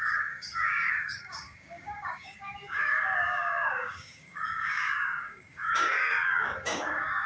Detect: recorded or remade remade